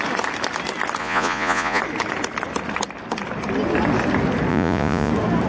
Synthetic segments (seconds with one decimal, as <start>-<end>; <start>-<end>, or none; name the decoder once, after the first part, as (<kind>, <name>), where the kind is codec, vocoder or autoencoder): 1.0-1.8 (vocoder, Vocos); 4.5-5.1